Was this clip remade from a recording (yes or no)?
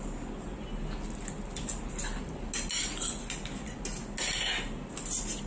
no